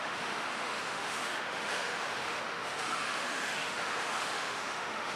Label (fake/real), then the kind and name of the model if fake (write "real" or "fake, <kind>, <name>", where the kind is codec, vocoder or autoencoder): fake, autoencoder, DAC-VAE